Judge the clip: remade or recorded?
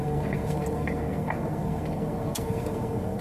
remade